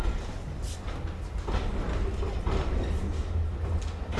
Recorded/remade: recorded